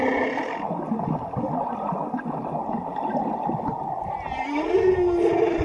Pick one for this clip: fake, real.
real